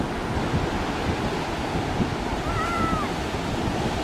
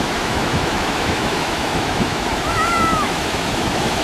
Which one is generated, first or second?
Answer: second